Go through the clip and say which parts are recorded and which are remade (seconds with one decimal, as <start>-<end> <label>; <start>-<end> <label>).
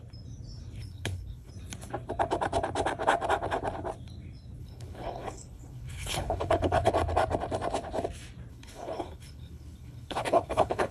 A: 0.0-0.8 recorded; 0.8-1.5 remade; 1.5-4.6 recorded; 4.6-6.9 remade; 6.9-8.5 recorded; 8.5-10.9 remade